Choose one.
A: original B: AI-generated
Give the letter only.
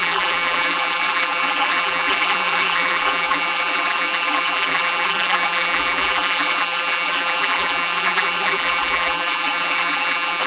B